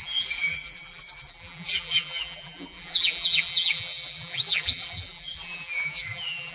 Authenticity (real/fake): fake